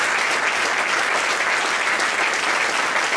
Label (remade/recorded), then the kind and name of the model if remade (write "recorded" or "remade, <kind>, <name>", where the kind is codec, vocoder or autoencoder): recorded